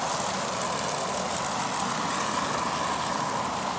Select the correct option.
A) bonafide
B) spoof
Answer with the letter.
A